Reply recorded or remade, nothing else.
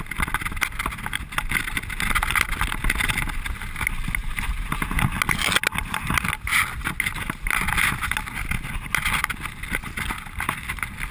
recorded